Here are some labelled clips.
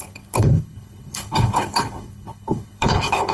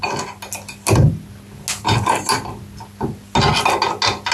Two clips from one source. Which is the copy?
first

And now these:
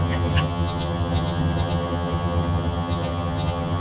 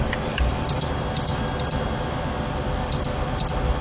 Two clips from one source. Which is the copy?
first